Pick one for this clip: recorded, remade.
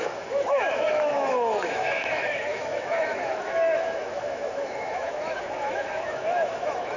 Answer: remade